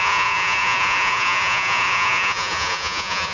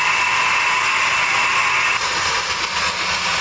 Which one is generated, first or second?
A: first